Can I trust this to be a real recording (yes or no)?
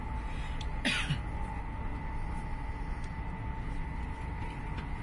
yes